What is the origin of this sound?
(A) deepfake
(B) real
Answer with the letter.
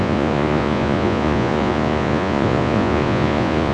A